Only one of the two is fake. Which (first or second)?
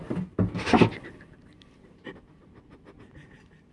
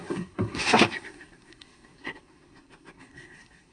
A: second